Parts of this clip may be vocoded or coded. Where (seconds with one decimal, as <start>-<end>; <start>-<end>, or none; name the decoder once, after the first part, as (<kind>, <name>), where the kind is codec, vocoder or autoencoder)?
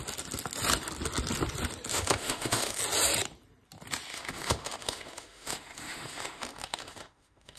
1.9-2.8 (autoencoder, DAC-VAE); 4.1-7.6